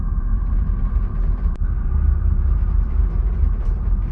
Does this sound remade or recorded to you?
remade